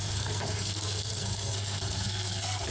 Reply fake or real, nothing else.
fake